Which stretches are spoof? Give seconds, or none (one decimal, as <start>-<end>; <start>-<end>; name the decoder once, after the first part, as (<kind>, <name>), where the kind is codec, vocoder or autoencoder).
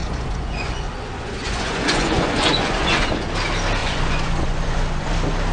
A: 0.0-3.3 (vocoder, Vocos); 3.8-5.1